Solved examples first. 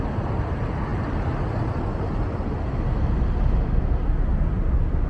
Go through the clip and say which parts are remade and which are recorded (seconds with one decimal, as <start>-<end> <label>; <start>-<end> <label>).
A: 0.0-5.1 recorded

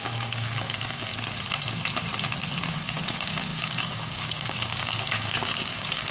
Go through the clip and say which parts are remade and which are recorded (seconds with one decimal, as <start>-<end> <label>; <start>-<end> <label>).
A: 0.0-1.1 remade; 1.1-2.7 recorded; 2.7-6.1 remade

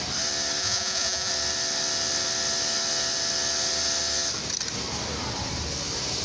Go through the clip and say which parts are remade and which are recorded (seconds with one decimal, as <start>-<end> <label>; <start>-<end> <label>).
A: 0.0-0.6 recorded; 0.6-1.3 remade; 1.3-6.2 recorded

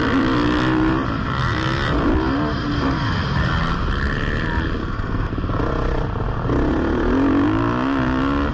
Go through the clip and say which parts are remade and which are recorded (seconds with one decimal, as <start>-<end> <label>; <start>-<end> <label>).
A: 0.0-4.8 recorded; 4.8-5.3 remade; 5.3-8.5 recorded

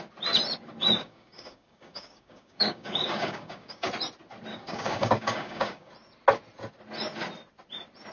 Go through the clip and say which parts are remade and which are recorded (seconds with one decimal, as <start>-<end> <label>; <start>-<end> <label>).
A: 0.0-1.0 recorded; 1.0-3.9 remade; 3.9-4.5 recorded; 4.5-5.9 remade; 5.9-8.1 recorded

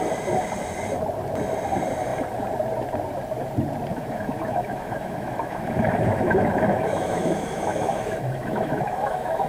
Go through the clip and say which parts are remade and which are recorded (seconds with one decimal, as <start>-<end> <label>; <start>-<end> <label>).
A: 0.0-3.9 recorded; 3.9-9.5 remade

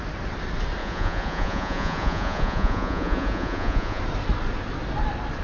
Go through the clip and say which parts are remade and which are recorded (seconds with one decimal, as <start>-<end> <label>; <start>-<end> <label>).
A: 0.0-0.8 recorded; 0.8-4.0 remade; 4.0-5.4 recorded

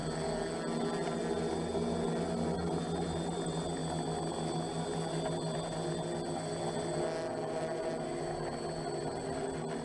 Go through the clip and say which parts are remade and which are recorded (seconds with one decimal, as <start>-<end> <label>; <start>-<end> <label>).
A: 0.0-9.8 recorded